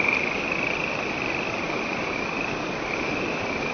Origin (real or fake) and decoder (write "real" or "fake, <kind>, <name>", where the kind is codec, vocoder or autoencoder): real